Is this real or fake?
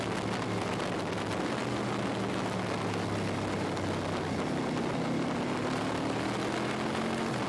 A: real